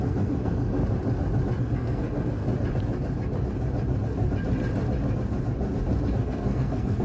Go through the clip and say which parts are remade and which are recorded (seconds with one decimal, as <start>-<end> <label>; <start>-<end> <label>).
0.0-0.8 remade; 0.8-1.6 recorded; 1.6-2.4 remade; 2.4-6.1 recorded; 6.1-7.0 remade